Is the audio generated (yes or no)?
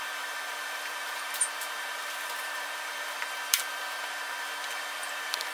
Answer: yes